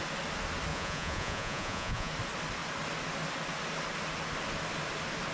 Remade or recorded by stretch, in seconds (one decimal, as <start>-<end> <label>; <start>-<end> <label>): 0.0-0.7 recorded; 0.7-2.1 remade; 2.1-5.3 recorded